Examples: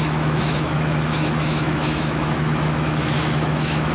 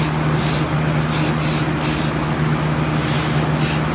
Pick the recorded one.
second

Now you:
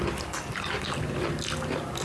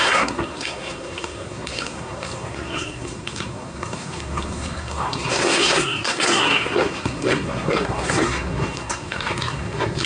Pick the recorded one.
first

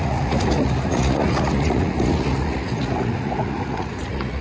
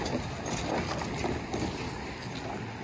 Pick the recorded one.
second